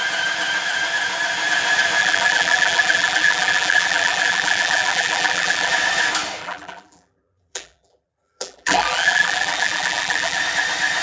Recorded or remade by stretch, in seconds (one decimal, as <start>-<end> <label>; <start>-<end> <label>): 0.0-2.0 recorded; 2.0-5.7 remade; 5.7-6.4 recorded; 6.4-10.4 remade; 10.4-11.0 recorded